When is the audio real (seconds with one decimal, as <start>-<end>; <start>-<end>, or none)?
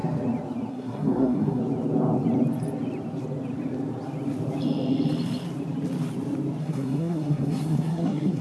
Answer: 0.0-0.7; 1.6-6.6